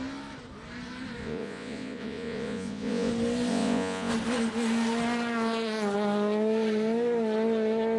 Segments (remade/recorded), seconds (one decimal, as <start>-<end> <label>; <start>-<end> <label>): 0.0-1.2 recorded; 1.2-3.1 remade; 3.1-3.5 recorded; 3.5-4.1 remade; 4.1-8.0 recorded